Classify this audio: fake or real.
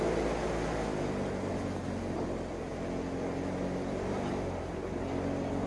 real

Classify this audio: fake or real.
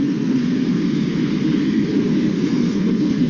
fake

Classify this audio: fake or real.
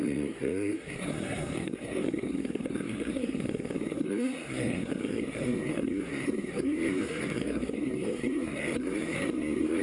fake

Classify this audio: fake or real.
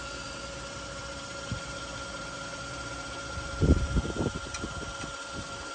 real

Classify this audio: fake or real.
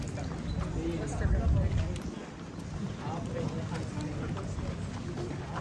real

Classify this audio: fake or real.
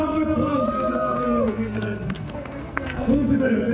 fake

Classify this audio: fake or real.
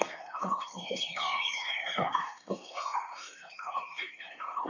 fake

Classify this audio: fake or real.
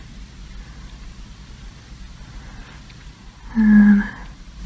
real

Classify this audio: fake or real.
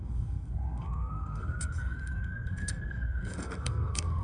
fake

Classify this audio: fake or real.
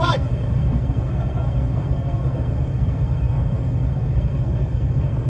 fake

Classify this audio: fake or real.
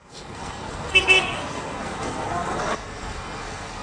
fake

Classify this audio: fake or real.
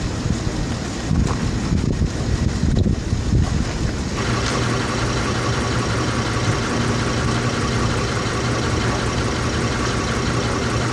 real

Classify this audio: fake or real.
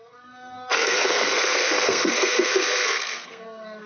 fake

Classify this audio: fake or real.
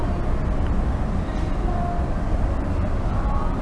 real